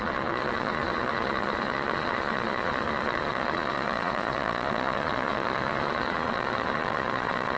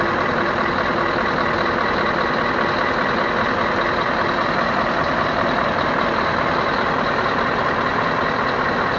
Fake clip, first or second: first